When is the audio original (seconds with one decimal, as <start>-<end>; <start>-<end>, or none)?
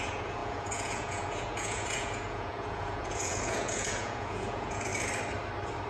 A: 4.9-5.9